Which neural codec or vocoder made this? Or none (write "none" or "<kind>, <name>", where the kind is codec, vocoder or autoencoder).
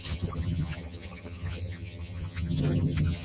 vocoder, HiFi-GAN